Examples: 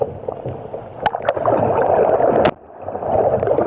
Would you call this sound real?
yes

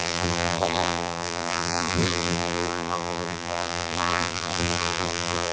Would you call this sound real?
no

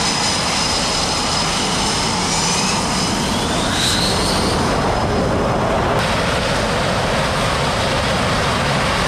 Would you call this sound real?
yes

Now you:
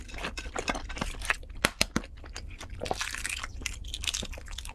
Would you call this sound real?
yes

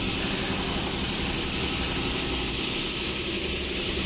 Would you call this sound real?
yes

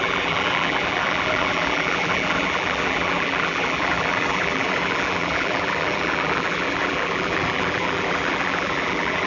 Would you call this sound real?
no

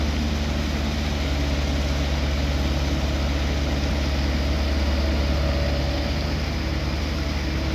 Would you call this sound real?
yes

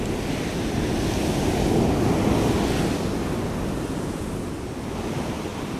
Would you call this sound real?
yes